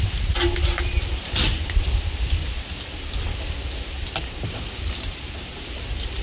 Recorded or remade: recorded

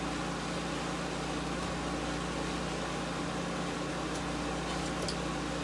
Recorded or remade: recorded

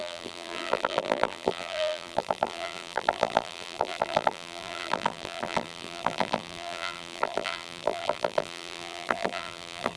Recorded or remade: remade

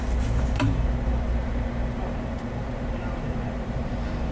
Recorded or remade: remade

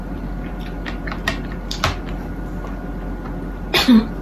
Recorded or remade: recorded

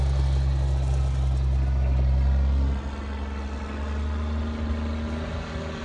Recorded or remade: recorded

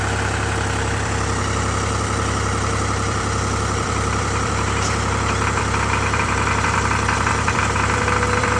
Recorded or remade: remade